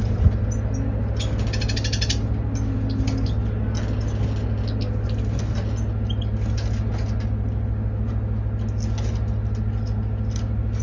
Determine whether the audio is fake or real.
real